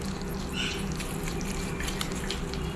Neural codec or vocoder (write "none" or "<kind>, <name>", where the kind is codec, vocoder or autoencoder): none